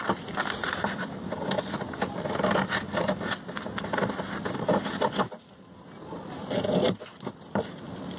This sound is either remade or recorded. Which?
recorded